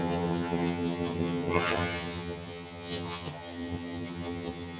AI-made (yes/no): yes